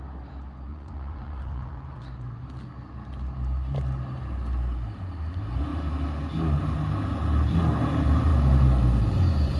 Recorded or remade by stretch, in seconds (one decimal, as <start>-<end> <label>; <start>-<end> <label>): 0.0-0.7 recorded; 0.7-2.4 remade; 2.4-9.6 recorded